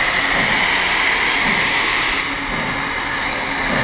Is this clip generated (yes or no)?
no